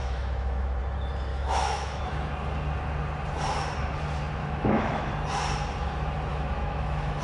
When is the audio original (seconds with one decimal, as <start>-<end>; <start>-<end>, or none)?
0.8-1.3; 2.0-4.4; 5.1-6.3